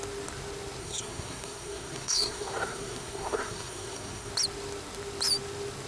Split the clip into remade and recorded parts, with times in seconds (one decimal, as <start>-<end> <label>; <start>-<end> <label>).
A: 0.0-0.8 recorded; 0.8-4.3 remade; 4.3-5.9 recorded